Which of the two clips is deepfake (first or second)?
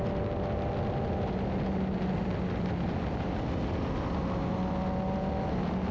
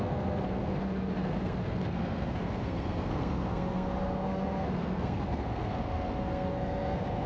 second